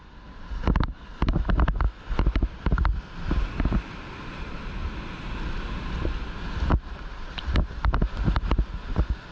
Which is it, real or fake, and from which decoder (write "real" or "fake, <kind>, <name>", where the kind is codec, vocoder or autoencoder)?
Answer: real